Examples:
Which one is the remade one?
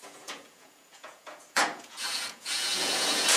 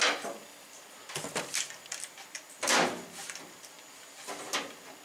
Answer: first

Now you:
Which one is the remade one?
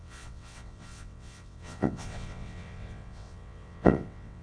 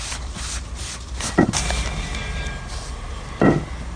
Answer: first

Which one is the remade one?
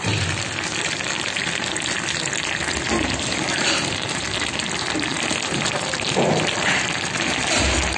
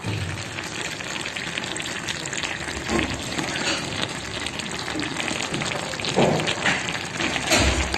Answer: first